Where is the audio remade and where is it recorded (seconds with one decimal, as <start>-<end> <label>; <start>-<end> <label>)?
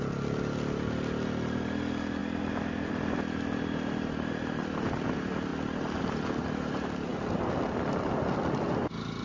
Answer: 0.0-9.2 recorded